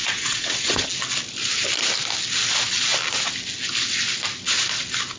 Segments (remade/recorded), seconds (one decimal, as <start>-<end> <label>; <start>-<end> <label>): 0.0-0.9 remade; 0.9-5.2 recorded